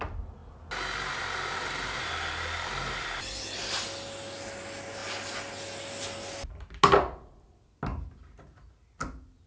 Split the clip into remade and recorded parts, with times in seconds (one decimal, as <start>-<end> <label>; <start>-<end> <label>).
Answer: 0.0-9.5 recorded